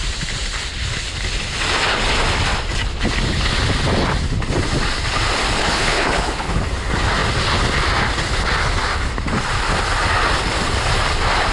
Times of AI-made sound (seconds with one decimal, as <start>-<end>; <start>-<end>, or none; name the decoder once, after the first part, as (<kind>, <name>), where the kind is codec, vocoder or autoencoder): 5.6-6.6 (codec, HILCodec)